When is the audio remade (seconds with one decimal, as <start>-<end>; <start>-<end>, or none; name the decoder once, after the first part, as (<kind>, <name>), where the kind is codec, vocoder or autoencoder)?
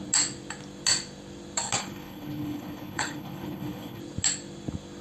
1.8-4.0 (codec, HILCodec)